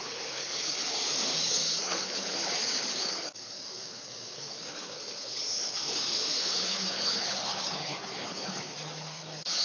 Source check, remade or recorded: remade